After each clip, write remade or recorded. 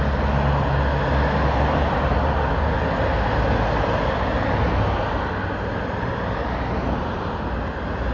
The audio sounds recorded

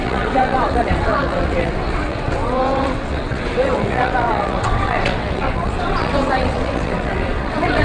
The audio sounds remade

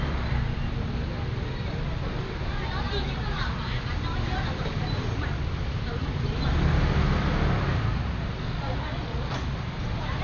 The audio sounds recorded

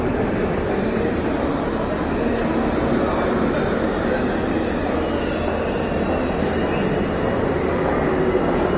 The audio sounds recorded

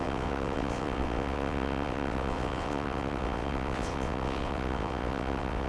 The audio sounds remade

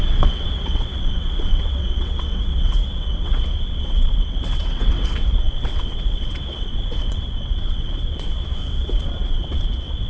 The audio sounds remade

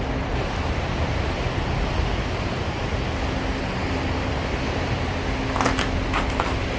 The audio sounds recorded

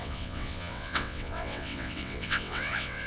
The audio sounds remade